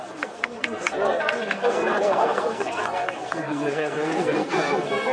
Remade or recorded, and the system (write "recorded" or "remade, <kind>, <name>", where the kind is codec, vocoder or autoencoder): remade, codec, SNAC